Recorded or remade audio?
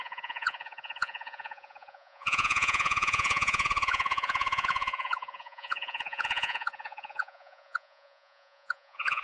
remade